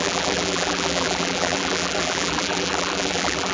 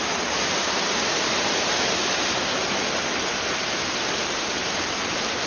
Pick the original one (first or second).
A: second